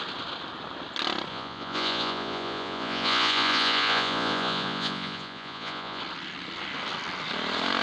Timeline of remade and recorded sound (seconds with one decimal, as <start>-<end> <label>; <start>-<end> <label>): 0.0-1.3 recorded; 1.3-6.0 remade; 6.0-7.8 recorded